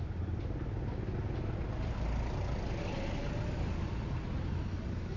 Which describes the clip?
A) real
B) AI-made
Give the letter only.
A